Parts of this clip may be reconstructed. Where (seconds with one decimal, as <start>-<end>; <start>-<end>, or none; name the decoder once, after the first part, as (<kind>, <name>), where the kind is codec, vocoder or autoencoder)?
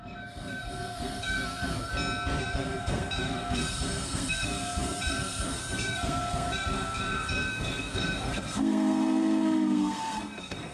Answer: 0.0-1.9 (codec, SNAC); 2.4-10.7